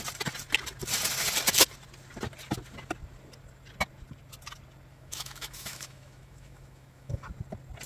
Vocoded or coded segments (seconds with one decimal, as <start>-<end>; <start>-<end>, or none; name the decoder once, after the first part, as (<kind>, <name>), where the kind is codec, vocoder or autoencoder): 4.9-7.2 (autoencoder, DAC-VAE)